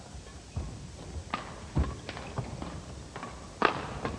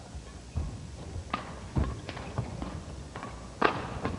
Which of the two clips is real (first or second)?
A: first